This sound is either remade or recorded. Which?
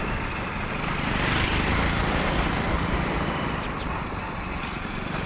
recorded